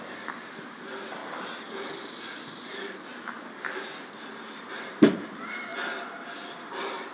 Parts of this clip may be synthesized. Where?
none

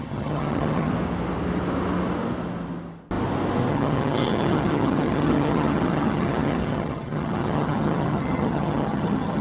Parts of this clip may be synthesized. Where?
0.0-0.9 (vocoder, HiFi-GAN); 3.7-9.4

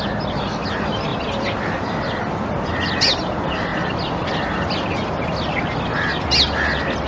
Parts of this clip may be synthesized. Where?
none

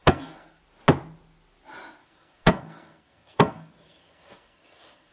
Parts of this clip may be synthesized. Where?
0.0-0.6 (codec, SNAC); 2.0-5.1

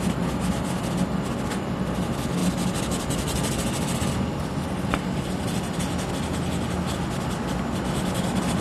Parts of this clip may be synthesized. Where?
2.4-6.1 (vocoder, BigVGAN v2)

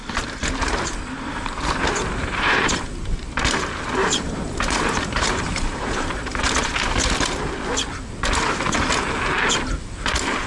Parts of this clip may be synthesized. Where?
0.0-3.6 (vocoder, BigVGAN v2); 4.0-6.5

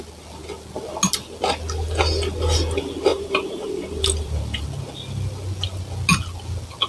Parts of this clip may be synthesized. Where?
3.1-4.0 (vocoder, BigVGAN v2)

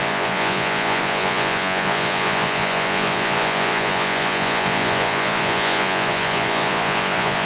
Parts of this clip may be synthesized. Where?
0.0-7.5 (vocoder, Vocos)